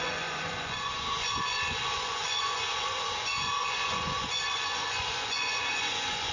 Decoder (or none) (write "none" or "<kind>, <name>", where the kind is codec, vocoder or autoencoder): vocoder, Vocos